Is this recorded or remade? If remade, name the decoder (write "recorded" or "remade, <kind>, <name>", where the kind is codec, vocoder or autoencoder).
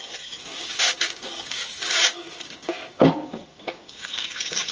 remade, codec, DAC